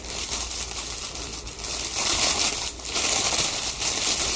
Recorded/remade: recorded